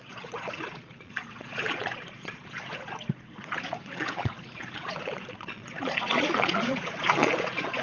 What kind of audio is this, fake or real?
fake